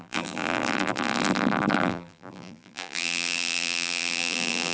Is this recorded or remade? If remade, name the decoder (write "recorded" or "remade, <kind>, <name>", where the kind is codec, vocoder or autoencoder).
remade, vocoder, BigVGAN v2